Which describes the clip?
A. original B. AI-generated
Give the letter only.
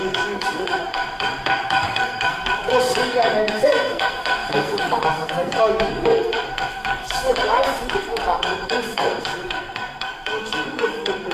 B